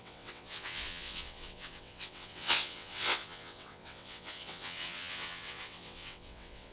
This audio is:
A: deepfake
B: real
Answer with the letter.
A